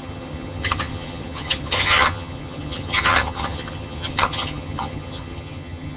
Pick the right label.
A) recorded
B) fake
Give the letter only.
B